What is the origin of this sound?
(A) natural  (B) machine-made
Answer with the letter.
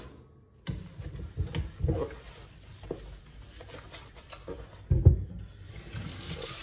A